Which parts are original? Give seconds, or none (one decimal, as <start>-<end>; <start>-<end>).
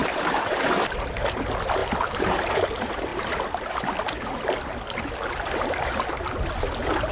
0.7-1.8; 2.5-7.1